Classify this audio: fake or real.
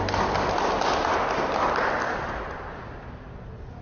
real